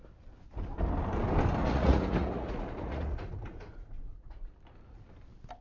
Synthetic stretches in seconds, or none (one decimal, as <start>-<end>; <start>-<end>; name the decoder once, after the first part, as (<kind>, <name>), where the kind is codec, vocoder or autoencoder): 1.6-4.5 (vocoder, Vocos)